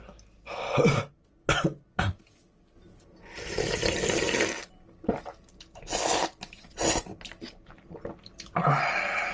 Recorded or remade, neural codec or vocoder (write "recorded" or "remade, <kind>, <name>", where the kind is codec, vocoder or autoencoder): recorded